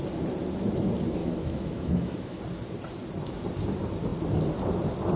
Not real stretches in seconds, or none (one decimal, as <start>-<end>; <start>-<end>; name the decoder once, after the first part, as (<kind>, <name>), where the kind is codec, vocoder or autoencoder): 1.2-2.4 (autoencoder, DAC-VAE)